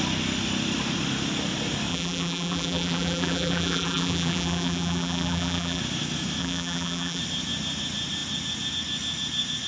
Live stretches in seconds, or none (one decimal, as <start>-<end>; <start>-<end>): 0.0-1.9; 5.8-6.4; 7.2-9.7